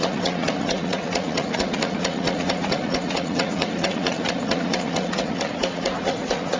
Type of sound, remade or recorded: remade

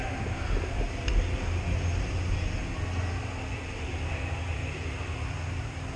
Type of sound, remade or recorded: recorded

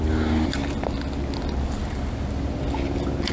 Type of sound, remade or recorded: recorded